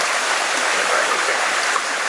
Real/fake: real